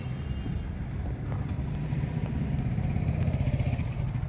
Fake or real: fake